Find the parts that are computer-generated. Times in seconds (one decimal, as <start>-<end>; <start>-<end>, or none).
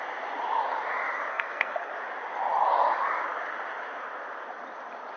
1.3-1.9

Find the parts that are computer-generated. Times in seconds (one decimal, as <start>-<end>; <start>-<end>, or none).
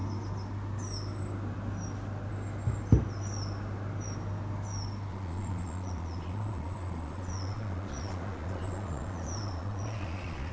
5.1-10.5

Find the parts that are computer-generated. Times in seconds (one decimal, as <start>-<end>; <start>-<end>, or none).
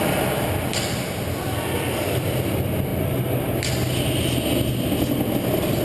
none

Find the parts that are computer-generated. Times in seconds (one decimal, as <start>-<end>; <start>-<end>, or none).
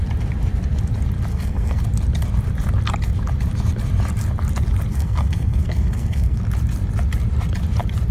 1.3-1.8; 4.9-6.4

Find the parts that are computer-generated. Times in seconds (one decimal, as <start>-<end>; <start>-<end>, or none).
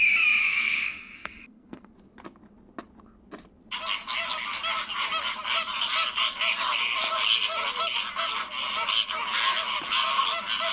0.4-1.9